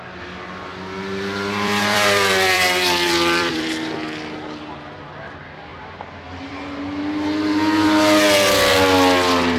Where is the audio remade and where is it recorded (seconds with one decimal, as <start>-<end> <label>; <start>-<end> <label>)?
0.0-0.7 recorded; 0.7-3.7 remade; 3.7-9.6 recorded

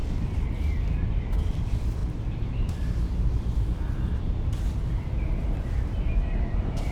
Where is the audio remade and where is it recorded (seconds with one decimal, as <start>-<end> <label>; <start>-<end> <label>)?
0.0-1.4 recorded; 1.4-6.9 remade

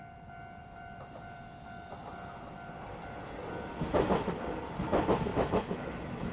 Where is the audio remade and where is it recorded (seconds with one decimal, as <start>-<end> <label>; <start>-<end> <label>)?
0.0-0.6 recorded; 0.6-1.4 remade; 1.4-5.3 recorded; 5.3-6.3 remade

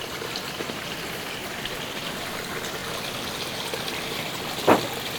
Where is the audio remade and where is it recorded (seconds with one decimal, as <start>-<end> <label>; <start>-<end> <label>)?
0.0-1.4 recorded; 1.4-2.2 remade; 2.2-5.2 recorded

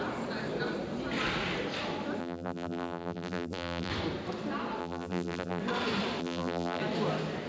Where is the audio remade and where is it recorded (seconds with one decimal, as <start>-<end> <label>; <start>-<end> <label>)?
0.0-2.2 recorded; 2.2-3.9 remade; 3.9-4.8 recorded; 4.8-5.6 remade; 5.6-6.2 recorded; 6.2-6.8 remade; 6.8-7.5 recorded

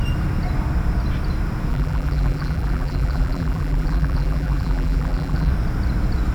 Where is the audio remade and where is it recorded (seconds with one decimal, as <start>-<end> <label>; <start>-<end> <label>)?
0.0-1.7 recorded; 1.7-5.5 remade; 5.5-6.3 recorded

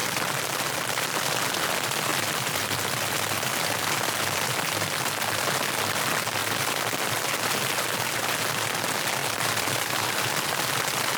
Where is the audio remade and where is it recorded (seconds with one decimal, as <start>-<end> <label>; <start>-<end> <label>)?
0.0-1.3 remade; 1.3-2.1 recorded; 2.1-4.9 remade; 4.9-9.2 recorded; 9.2-11.2 remade

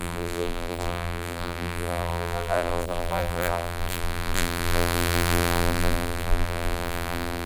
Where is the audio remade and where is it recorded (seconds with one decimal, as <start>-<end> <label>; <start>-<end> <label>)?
0.0-7.5 remade